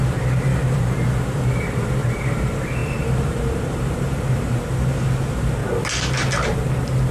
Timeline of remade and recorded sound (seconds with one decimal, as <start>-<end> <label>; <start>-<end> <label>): 0.0-5.6 remade; 5.6-7.1 recorded